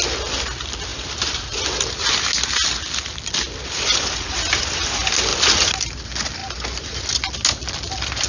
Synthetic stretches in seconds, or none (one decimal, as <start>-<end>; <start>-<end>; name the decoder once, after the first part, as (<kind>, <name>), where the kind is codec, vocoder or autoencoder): 0.9-2.0 (vocoder, BigVGAN v2)

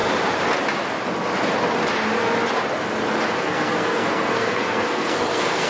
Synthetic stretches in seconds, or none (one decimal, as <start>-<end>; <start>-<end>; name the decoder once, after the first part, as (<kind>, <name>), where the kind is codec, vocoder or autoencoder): 3.4-5.7 (codec, SNAC)

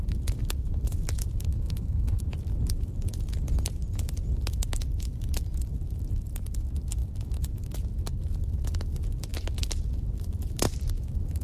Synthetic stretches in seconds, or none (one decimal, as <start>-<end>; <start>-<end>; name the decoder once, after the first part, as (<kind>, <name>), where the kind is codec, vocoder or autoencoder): 1.5-2.2 (codec, SNAC)

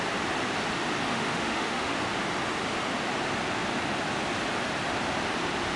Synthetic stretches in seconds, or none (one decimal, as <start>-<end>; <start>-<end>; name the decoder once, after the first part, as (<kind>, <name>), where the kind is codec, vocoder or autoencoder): 1.1-2.0 (autoencoder, DAC-VAE)

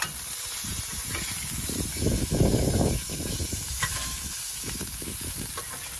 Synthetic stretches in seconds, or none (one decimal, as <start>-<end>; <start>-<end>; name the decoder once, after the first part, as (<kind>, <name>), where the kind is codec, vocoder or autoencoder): 1.9-5.5 (autoencoder, DAC-VAE)

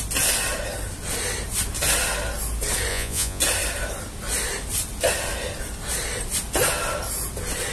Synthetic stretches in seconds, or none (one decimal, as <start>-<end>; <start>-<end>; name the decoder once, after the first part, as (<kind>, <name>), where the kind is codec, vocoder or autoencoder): 2.9-3.4 (vocoder, Vocos)